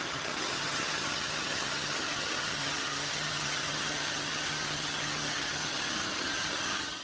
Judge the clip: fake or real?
fake